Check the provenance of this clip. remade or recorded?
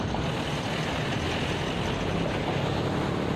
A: recorded